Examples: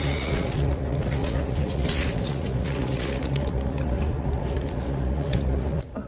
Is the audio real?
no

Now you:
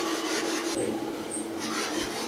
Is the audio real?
yes